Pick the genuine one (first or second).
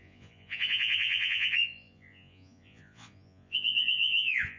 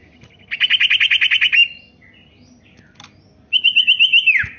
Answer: second